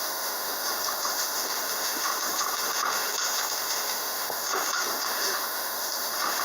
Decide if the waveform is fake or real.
fake